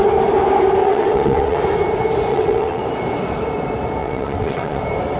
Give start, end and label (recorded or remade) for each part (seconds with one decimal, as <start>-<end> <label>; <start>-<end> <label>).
0.0-0.8 recorded; 0.8-1.6 remade; 1.6-2.3 recorded; 2.3-2.8 remade; 2.8-4.0 recorded; 4.0-4.8 remade; 4.8-5.2 recorded